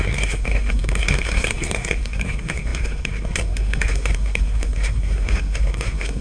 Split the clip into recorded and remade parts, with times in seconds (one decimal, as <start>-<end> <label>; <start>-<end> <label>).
0.0-6.2 remade